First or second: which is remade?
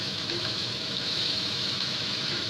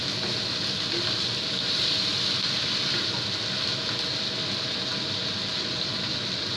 first